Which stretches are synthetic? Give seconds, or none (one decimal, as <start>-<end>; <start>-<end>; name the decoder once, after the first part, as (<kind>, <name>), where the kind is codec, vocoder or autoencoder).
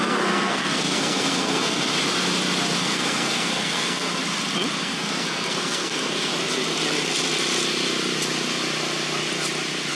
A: 0.0-1.9 (codec, SNAC); 2.8-4.2; 4.8-6.3